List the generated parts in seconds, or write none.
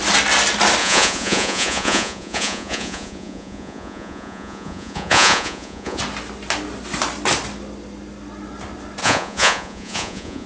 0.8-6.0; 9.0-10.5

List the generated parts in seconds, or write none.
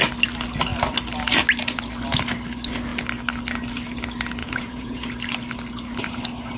4.4-5.1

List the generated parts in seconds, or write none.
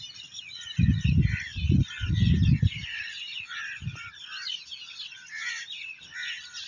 none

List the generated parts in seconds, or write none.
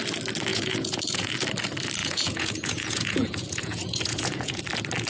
0.5-1.3; 2.0-4.6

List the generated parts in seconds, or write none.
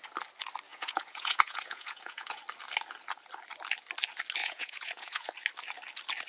0.7-2.4; 4.4-5.3